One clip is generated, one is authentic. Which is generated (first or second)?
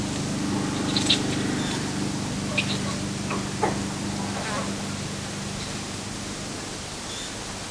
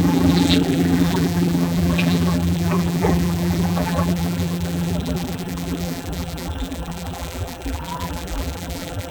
second